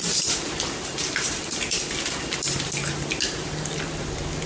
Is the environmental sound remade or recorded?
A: recorded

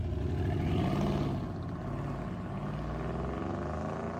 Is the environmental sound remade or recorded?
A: recorded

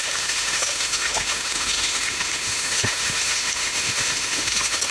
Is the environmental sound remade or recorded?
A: remade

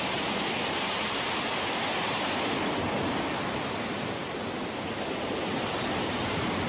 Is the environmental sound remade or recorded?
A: recorded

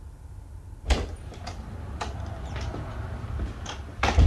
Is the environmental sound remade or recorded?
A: recorded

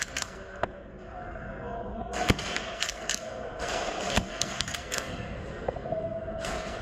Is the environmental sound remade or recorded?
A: remade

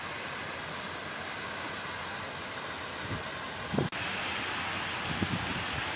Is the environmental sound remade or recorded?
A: recorded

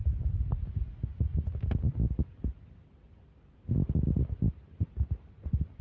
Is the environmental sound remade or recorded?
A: recorded